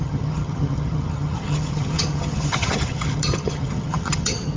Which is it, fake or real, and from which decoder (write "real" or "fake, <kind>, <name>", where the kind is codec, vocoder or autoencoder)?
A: fake, vocoder, HiFi-GAN